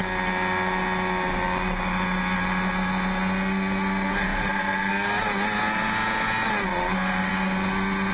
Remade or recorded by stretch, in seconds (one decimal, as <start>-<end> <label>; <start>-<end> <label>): 0.0-4.3 recorded; 4.3-4.9 remade; 4.9-6.7 recorded; 6.7-7.3 remade; 7.3-8.1 recorded